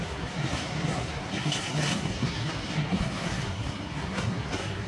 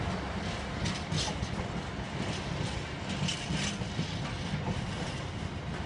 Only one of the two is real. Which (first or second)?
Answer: second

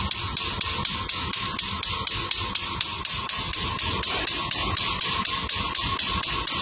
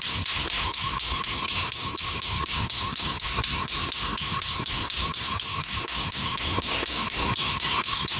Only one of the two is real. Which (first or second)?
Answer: first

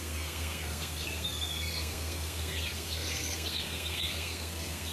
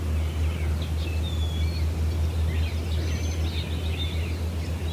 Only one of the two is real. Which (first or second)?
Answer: second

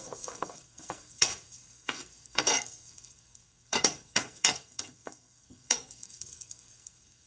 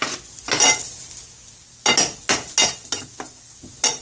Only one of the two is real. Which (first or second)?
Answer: second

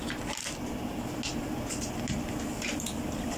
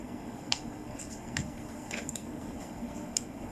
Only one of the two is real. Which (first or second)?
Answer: first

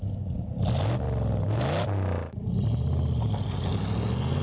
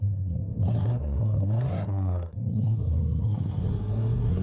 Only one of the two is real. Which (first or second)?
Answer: first